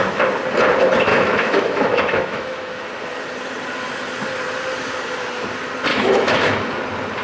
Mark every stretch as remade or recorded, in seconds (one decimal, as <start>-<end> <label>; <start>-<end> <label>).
0.0-1.1 recorded; 1.1-2.8 remade; 2.8-5.9 recorded; 5.9-6.7 remade; 6.7-7.2 recorded